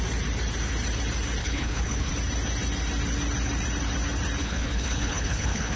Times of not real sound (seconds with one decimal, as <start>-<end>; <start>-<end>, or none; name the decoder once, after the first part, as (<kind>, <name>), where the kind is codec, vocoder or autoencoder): 1.4-2.1 (codec, HILCodec); 4.4-5.8